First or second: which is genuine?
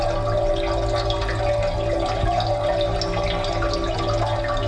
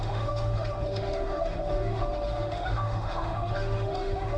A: first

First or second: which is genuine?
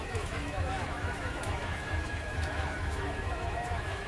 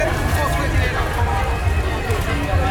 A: second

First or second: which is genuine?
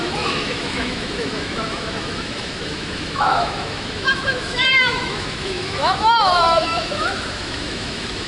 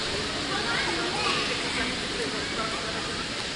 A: second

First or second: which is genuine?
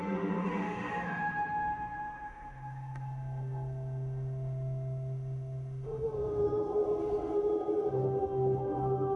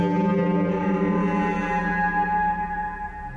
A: second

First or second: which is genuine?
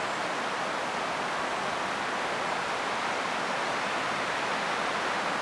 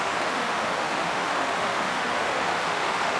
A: first